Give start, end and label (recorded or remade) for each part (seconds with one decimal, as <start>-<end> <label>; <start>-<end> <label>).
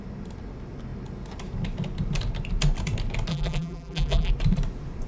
0.0-3.3 recorded; 3.3-4.3 remade; 4.3-5.1 recorded